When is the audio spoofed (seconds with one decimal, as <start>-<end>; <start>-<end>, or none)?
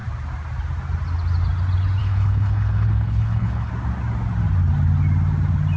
2.0-3.7